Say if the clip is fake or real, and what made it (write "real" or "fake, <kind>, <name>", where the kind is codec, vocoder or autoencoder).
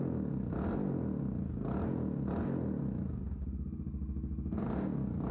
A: real